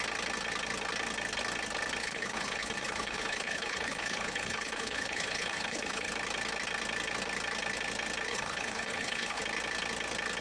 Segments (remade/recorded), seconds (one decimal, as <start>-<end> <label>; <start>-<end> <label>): 0.0-2.0 recorded; 2.0-6.1 remade; 6.1-8.3 recorded; 8.3-9.4 remade; 9.4-10.4 recorded